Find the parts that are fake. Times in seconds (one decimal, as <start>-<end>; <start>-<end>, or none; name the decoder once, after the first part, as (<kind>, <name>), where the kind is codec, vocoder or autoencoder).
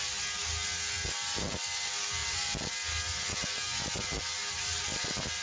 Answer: none